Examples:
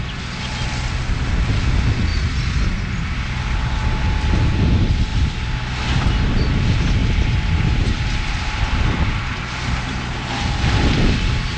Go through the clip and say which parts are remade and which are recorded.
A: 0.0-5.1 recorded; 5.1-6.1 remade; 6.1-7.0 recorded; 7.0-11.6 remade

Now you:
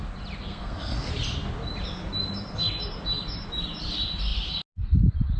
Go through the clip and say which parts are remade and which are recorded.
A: 0.0-0.5 recorded; 0.5-1.1 remade; 1.1-5.4 recorded

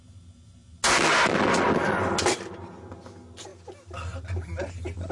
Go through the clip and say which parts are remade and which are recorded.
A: 0.0-5.1 recorded

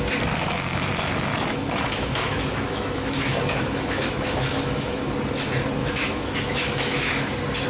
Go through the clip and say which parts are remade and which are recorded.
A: 0.0-1.3 recorded; 1.3-5.0 remade; 5.0-5.8 recorded; 5.8-7.3 remade; 7.3-7.7 recorded

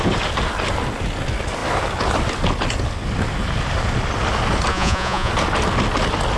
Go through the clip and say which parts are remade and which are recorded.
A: 0.0-4.7 recorded; 4.7-5.3 remade; 5.3-6.4 recorded

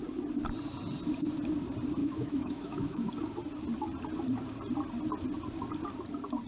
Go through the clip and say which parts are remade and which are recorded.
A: 0.0-2.0 recorded; 2.0-3.1 remade; 3.1-6.5 recorded